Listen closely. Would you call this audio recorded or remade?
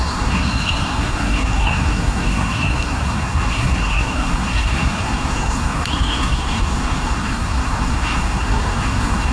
remade